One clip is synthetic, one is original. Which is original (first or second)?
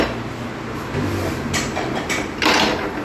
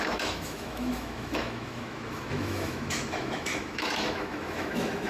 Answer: first